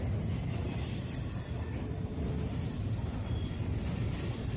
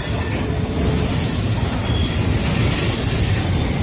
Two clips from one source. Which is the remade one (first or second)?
first